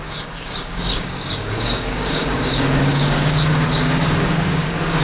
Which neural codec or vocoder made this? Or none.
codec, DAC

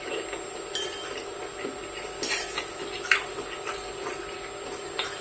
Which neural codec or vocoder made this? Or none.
none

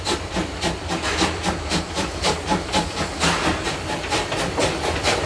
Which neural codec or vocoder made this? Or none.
none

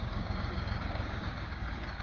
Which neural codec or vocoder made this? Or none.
codec, DAC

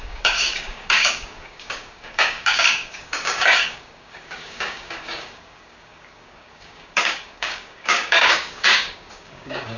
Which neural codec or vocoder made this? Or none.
codec, DAC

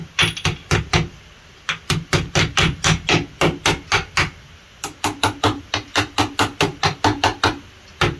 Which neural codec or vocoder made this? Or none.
none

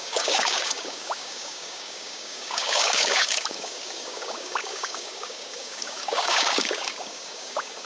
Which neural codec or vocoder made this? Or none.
codec, DAC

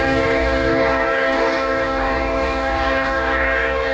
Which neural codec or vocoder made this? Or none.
codec, DAC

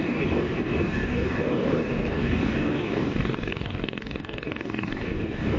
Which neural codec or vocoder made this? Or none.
codec, DAC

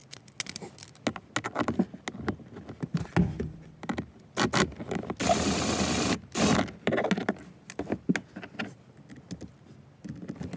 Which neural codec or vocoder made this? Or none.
none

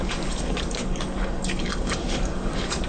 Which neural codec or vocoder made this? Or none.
codec, DAC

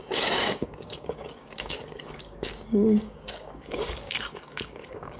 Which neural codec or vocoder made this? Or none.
codec, DAC